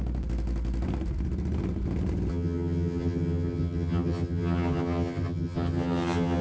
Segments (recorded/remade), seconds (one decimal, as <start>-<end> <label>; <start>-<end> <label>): 0.0-2.3 recorded; 2.3-6.4 remade

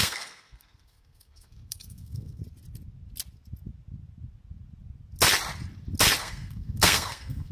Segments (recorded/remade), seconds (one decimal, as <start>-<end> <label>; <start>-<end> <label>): 0.0-2.4 remade; 2.4-6.2 recorded; 6.2-7.5 remade

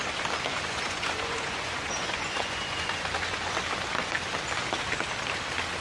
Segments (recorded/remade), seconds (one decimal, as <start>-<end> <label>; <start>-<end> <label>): 0.0-0.5 recorded; 0.5-3.5 remade; 3.5-5.8 recorded